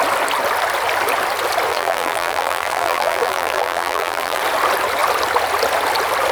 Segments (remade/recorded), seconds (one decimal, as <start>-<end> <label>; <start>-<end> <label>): 0.0-1.7 recorded; 1.7-4.4 remade; 4.4-6.3 recorded